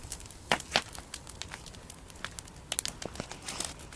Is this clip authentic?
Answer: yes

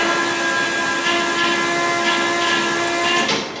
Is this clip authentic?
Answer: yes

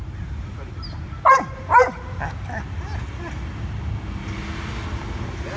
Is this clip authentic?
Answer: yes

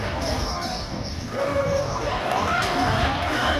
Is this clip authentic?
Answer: no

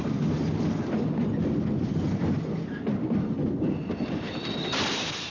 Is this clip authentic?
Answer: yes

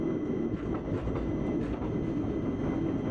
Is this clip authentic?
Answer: yes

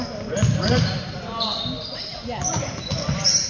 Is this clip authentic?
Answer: yes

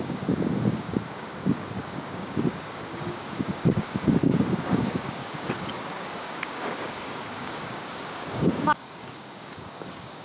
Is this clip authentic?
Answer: no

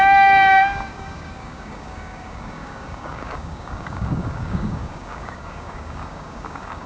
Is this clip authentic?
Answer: no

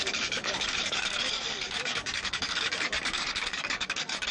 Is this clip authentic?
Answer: no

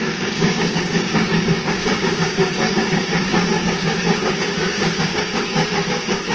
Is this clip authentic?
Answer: no